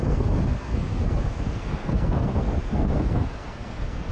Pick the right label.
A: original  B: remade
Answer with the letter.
B